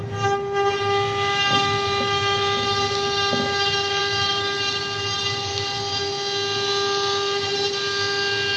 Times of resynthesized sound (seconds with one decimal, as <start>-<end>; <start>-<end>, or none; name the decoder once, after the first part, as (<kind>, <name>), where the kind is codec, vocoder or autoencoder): none